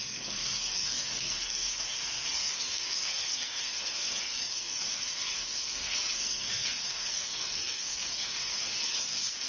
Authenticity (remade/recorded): remade